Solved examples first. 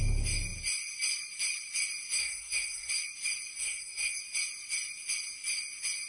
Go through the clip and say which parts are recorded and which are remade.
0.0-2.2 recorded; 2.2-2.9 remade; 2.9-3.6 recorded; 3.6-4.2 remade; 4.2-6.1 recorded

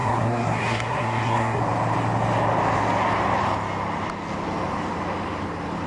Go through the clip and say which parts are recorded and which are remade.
0.0-1.6 remade; 1.6-5.9 recorded

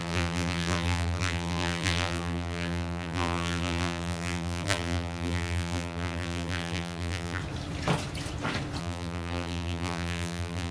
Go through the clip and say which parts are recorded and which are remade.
0.0-7.4 remade; 7.4-8.8 recorded; 8.8-10.7 remade

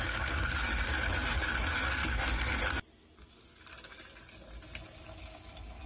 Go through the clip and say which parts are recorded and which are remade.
0.0-5.9 recorded